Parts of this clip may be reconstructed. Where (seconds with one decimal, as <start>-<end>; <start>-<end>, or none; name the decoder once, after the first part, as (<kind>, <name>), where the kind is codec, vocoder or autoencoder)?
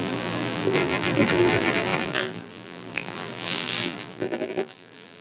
0.0-5.2 (vocoder, BigVGAN v2)